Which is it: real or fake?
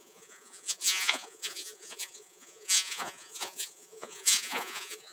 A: fake